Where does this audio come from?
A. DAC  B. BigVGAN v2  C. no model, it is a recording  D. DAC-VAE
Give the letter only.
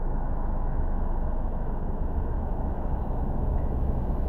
D